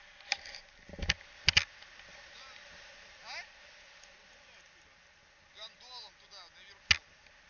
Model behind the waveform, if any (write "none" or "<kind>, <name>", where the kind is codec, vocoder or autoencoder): none